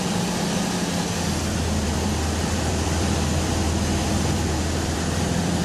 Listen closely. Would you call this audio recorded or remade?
remade